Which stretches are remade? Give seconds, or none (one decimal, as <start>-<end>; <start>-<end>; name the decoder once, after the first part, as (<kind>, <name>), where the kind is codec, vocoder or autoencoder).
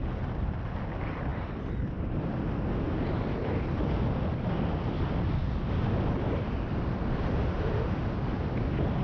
none